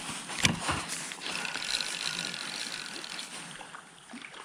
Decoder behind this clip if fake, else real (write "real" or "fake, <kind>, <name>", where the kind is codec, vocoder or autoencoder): real